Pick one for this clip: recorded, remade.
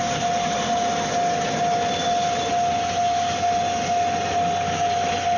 recorded